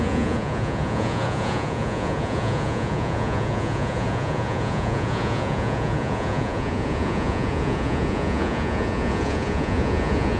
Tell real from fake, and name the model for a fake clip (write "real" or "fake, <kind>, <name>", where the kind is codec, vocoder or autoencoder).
fake, vocoder, Vocos